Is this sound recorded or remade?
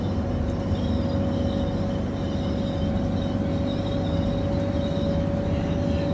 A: recorded